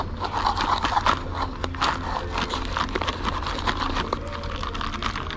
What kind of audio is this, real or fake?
real